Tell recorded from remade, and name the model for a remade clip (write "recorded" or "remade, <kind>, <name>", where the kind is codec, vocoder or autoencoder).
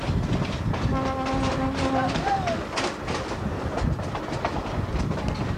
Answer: recorded